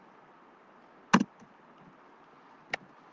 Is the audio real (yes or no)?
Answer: yes